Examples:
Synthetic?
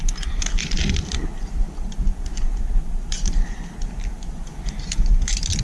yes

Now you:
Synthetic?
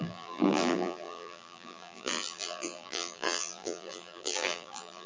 yes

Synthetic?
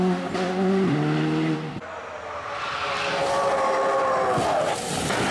no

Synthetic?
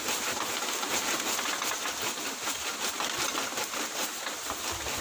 no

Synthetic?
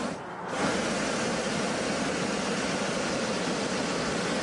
no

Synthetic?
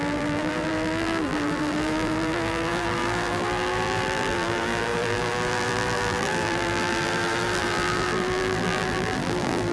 yes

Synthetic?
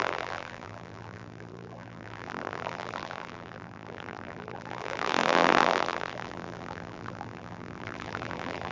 yes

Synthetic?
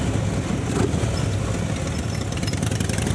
no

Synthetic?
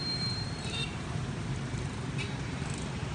yes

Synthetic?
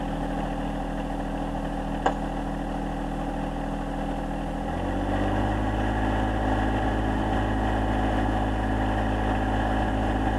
no